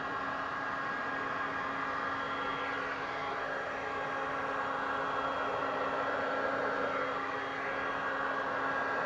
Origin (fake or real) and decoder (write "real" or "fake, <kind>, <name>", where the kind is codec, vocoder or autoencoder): real